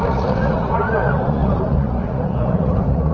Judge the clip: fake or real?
fake